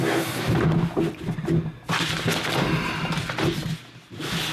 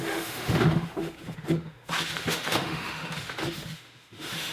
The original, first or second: first